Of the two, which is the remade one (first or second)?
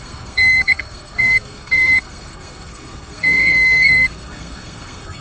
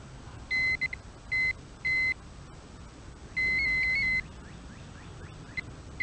first